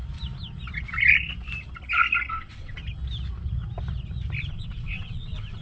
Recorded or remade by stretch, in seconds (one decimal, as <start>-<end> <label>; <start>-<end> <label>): 0.0-2.3 recorded; 2.3-2.8 remade; 2.8-4.5 recorded; 4.5-5.6 remade